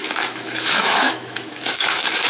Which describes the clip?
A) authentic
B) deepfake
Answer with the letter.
B